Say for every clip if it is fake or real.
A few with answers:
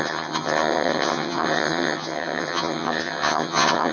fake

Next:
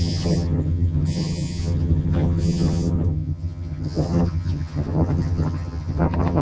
fake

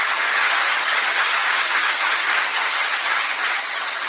fake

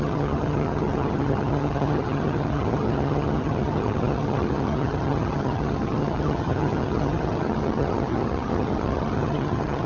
fake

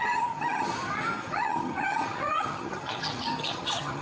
fake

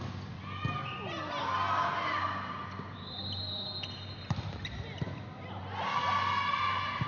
real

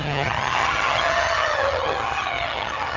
fake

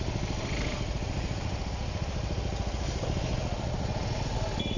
real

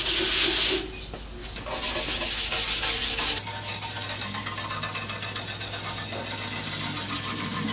real